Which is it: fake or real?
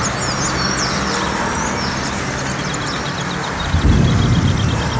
real